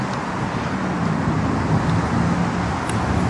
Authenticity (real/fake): real